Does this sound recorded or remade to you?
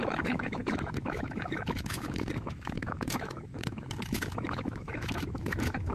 remade